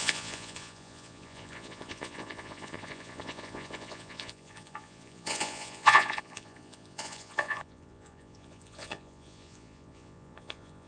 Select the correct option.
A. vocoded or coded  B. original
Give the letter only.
A